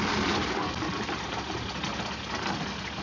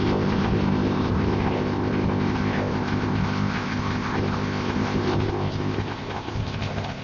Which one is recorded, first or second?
first